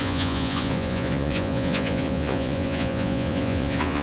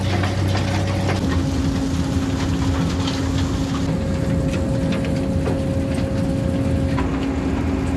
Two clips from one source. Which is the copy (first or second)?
first